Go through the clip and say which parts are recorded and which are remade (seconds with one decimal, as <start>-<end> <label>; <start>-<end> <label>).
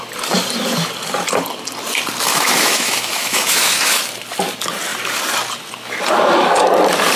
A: 0.0-2.3 recorded; 2.3-4.0 remade; 4.0-7.2 recorded